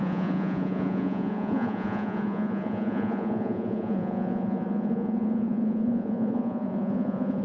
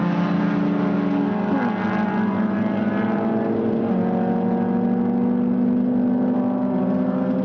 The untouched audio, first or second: second